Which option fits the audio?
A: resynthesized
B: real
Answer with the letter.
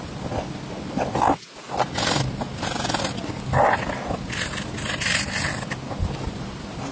B